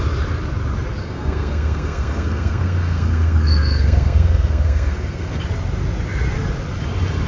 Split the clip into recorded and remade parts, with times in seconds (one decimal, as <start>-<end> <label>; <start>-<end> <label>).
0.0-1.0 recorded; 1.0-5.4 remade; 5.4-7.3 recorded